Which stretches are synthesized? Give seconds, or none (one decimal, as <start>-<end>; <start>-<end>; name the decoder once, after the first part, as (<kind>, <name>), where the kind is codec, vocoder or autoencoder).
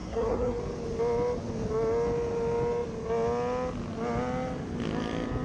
0.0-0.6 (codec, SNAC)